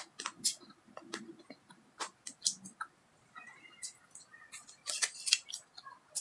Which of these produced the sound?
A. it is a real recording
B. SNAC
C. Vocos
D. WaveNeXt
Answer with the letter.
A